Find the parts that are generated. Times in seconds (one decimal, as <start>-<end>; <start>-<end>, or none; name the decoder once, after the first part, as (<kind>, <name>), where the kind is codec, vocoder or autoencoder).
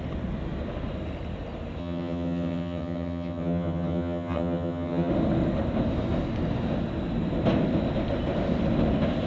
1.8-5.1 (vocoder, HiFi-GAN)